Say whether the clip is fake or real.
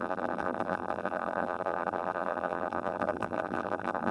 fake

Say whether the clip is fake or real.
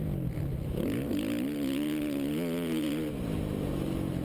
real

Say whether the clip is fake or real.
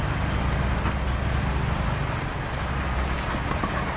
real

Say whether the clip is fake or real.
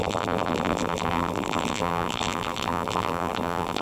fake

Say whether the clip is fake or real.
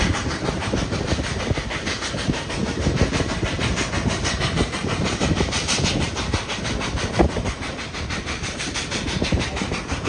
fake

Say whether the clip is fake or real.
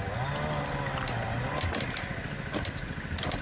real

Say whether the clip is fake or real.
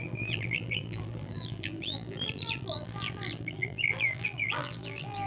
fake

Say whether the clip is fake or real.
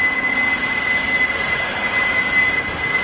real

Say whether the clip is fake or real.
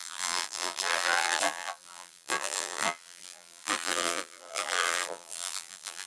fake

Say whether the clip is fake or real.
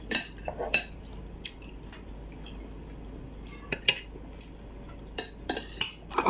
fake